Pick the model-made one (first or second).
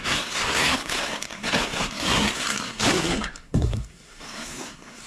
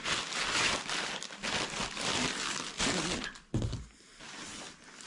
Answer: first